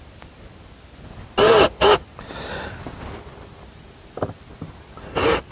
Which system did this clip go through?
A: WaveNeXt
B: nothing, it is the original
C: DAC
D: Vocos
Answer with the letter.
B